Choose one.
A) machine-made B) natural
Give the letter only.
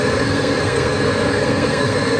A